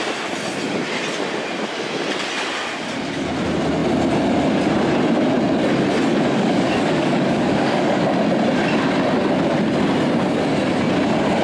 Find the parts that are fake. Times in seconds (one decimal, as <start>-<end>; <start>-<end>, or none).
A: 6.1-8.0